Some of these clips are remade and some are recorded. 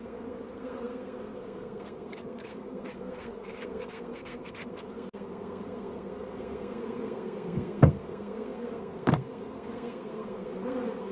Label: remade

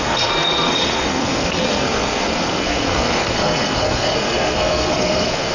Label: remade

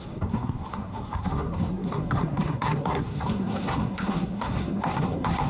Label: remade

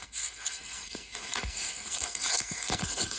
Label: remade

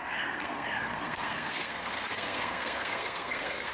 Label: remade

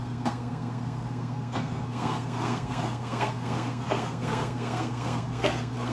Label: remade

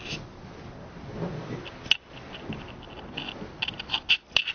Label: recorded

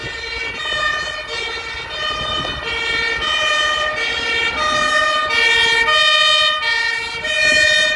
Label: recorded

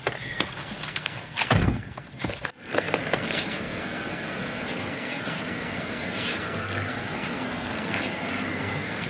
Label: remade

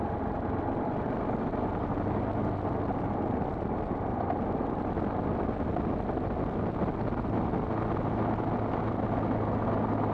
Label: recorded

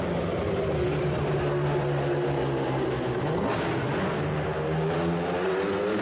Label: recorded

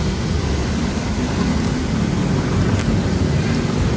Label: recorded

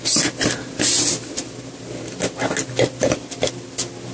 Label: recorded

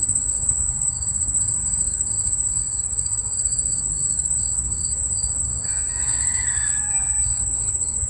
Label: remade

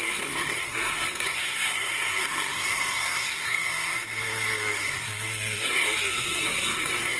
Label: remade